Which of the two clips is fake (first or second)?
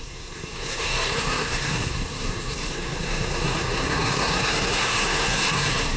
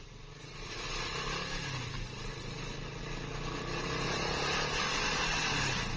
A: first